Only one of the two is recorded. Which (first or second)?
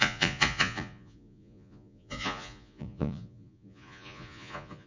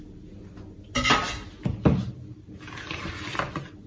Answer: second